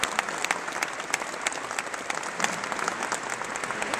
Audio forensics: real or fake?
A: real